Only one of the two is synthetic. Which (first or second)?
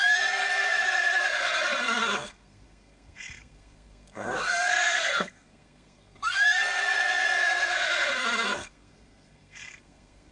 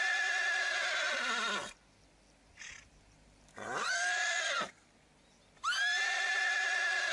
first